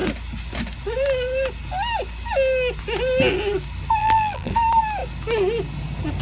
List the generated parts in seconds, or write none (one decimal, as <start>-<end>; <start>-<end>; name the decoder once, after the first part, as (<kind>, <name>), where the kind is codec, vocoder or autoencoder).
4.0-4.5 (vocoder, BigVGAN v2)